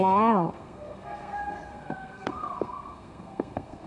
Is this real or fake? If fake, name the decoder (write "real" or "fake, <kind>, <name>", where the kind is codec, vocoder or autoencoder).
fake, codec, SNAC